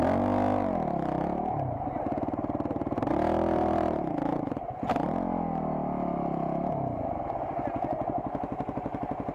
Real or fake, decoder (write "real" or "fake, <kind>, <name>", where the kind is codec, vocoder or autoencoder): real